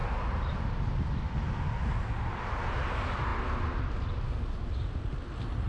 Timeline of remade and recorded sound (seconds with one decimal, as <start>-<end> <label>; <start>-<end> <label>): 0.0-5.7 recorded